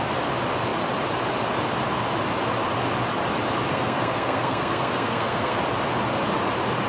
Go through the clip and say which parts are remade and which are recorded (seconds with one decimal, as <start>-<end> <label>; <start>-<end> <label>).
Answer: 0.0-3.7 recorded; 3.7-5.6 remade; 5.6-6.9 recorded